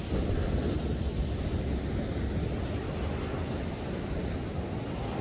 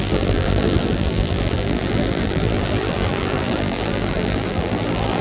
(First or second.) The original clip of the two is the first